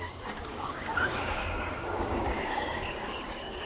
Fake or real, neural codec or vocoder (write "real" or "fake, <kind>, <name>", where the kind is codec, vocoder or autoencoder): fake, codec, DAC